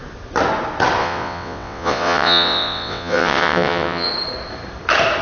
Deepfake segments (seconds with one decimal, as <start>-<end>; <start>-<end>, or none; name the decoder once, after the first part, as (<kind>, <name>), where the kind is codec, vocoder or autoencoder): 1.0-4.1 (vocoder, WaveNeXt)